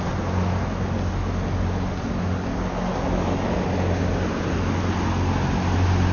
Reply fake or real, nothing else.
real